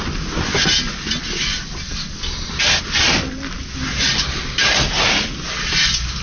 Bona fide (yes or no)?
yes